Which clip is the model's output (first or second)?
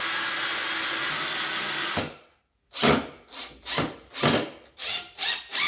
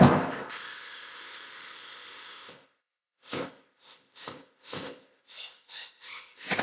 second